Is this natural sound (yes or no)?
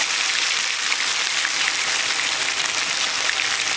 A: yes